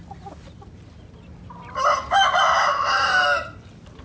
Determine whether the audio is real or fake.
real